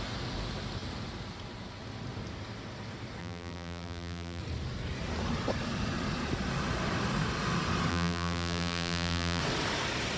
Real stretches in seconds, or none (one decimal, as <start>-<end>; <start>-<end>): 0.0-3.2; 4.4-7.9; 9.4-10.2